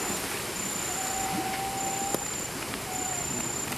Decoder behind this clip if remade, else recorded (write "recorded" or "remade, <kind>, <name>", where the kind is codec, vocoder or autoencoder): recorded